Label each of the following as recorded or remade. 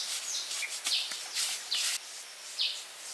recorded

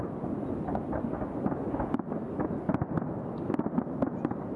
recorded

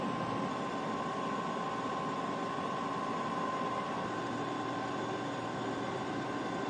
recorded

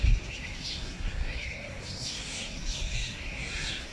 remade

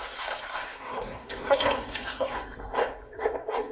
remade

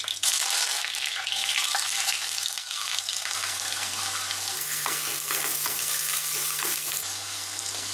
remade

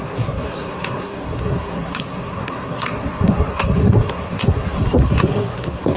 remade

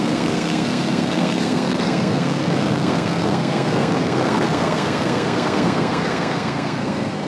remade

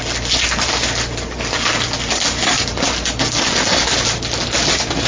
recorded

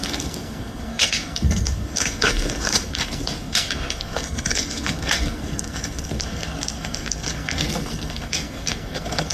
remade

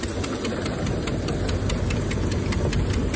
recorded